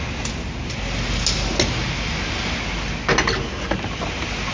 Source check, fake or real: real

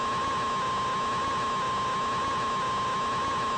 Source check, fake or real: real